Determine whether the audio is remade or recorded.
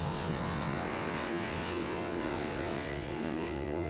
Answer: remade